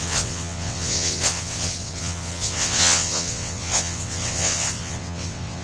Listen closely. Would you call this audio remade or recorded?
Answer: remade